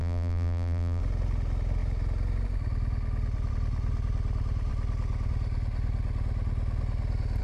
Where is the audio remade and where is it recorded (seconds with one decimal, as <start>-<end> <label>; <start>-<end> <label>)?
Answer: 0.0-1.0 remade; 1.0-7.4 recorded